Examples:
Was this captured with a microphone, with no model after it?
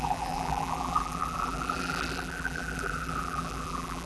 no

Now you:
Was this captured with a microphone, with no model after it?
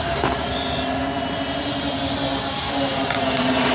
no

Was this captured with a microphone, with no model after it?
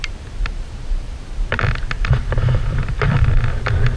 no